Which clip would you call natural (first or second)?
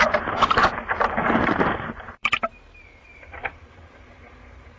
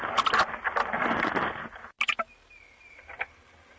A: second